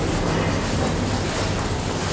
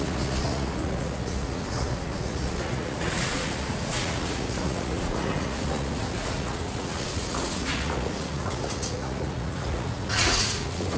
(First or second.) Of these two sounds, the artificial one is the second